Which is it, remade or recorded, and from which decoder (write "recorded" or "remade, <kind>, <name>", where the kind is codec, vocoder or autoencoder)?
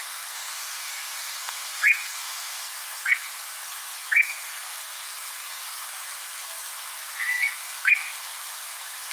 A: remade, codec, SNAC